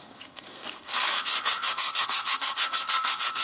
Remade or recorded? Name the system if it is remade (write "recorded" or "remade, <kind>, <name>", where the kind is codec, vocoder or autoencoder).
remade, codec, SNAC